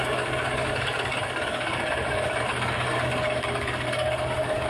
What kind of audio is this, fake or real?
fake